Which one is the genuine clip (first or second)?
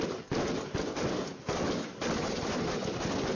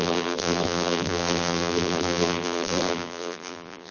first